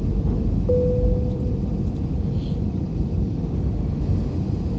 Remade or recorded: recorded